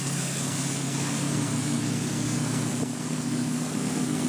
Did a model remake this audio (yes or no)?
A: yes